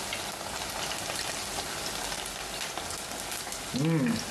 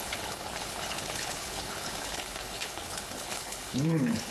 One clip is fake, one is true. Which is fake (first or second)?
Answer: second